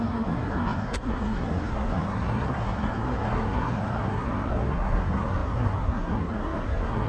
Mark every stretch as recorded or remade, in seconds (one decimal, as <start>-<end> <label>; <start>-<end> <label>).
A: 0.0-7.1 remade